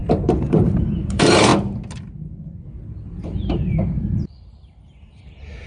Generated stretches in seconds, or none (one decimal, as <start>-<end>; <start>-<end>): 0.0-1.5; 3.2-5.7